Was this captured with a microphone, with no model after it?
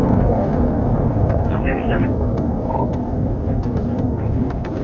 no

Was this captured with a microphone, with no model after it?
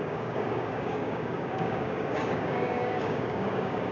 no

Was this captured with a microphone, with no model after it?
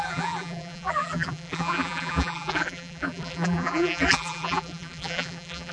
no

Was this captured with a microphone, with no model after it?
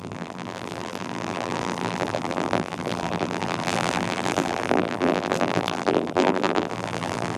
no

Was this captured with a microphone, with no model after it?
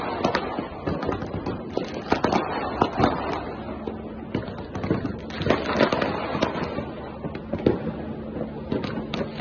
yes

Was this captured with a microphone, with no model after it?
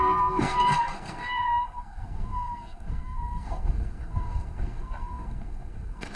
no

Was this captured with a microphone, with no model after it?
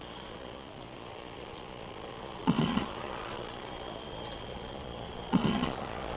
no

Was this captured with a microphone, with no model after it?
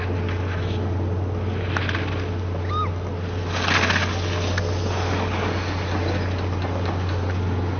yes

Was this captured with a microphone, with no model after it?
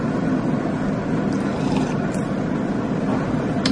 yes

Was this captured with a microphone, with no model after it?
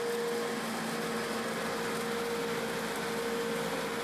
yes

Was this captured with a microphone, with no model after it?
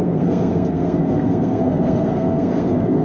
no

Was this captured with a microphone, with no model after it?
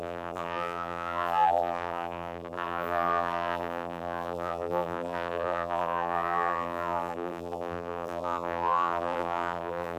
no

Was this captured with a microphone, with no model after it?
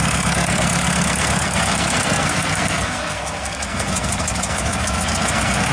no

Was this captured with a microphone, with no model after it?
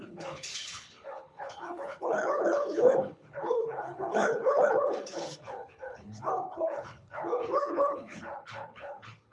no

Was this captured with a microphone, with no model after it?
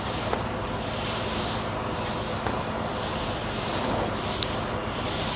yes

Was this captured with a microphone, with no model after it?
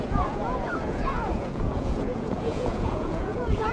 no